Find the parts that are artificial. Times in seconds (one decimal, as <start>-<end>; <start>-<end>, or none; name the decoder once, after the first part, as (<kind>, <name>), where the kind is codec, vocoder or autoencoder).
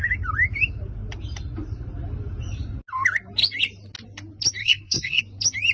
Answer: 4.6-5.2 (codec, SNAC)